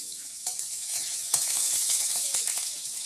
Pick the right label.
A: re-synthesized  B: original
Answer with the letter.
A